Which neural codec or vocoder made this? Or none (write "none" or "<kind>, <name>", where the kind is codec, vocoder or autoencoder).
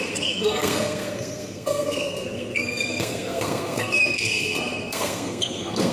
codec, SNAC